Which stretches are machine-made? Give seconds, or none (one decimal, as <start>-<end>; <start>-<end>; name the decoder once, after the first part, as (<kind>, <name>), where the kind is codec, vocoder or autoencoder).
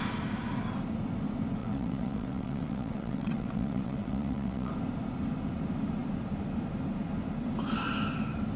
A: 1.6-4.7 (vocoder, WaveNeXt)